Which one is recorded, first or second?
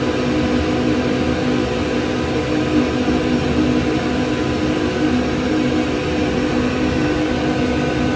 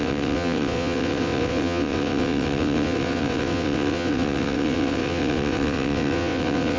first